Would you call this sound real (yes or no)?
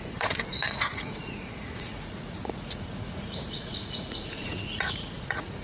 no